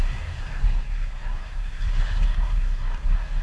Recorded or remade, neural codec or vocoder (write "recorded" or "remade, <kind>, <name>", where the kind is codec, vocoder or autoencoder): remade, codec, SNAC